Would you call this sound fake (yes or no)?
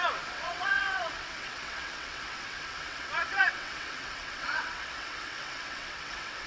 yes